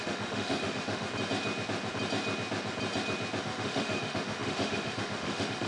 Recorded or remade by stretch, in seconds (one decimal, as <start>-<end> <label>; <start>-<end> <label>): 0.0-1.1 remade; 1.1-3.4 recorded; 3.4-5.7 remade